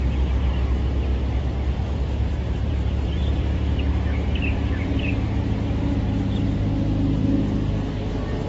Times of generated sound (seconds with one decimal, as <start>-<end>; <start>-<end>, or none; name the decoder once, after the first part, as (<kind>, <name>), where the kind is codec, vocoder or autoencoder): 1.1-5.0 (vocoder, BigVGAN v2)